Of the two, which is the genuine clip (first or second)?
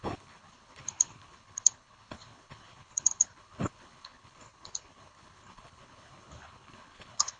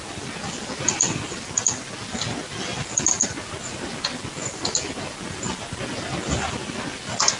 second